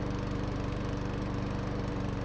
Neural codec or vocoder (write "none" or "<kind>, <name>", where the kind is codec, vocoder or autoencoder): vocoder, BigVGAN v2